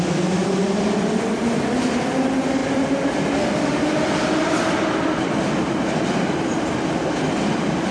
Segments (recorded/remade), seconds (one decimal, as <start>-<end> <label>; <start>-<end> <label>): 0.0-7.9 recorded